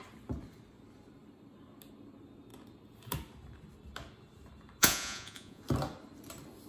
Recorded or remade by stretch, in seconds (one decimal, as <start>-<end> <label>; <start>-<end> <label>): 0.0-4.8 recorded; 4.8-5.6 remade; 5.6-6.7 recorded